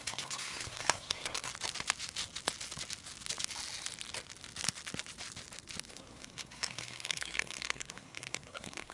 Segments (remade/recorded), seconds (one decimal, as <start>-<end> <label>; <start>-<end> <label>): 0.0-1.5 remade; 1.5-5.9 recorded; 5.9-8.9 remade